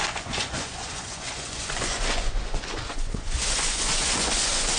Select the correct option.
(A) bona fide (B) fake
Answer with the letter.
B